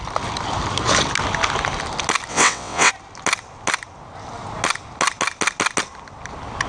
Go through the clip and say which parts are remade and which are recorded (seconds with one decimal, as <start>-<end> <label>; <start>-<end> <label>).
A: 0.0-2.3 recorded; 2.3-2.9 remade; 2.9-6.7 recorded